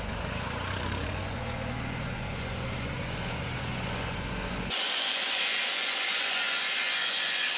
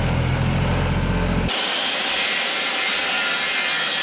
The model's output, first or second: first